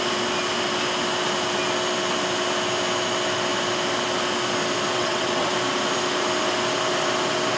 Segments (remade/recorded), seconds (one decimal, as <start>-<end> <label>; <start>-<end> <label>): 0.0-4.9 recorded; 4.9-5.5 remade; 5.5-7.6 recorded